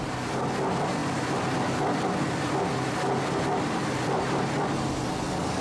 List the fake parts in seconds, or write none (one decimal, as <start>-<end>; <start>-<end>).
1.0-4.4